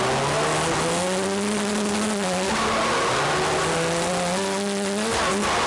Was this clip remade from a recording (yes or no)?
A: no